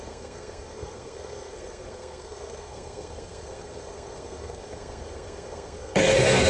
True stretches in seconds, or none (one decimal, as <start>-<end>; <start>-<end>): none

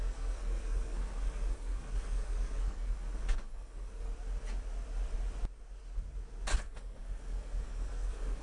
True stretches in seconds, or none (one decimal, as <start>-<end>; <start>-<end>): 4.1-6.6

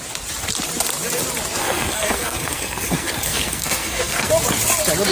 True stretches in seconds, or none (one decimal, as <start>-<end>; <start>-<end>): 0.0-1.6; 4.3-5.1

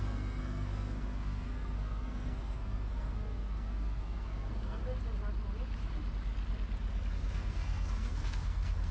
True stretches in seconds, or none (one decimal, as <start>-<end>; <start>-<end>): 4.8-7.1

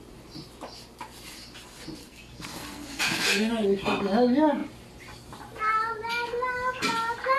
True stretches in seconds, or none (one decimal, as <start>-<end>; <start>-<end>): 0.0-2.0; 3.5-7.4